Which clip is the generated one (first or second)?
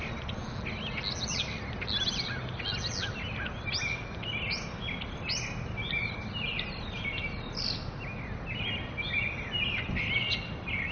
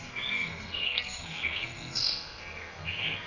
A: second